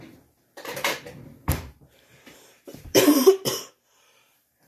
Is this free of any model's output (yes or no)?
no